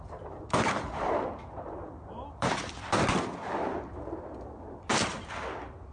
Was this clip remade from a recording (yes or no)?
no